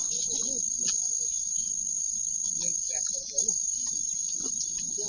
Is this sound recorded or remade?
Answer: recorded